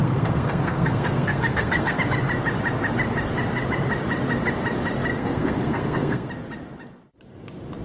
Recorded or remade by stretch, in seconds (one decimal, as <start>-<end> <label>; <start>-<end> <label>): 0.0-2.0 remade; 2.0-5.1 recorded; 5.1-6.3 remade; 6.3-7.8 recorded